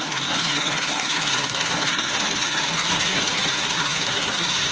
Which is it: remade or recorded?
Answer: remade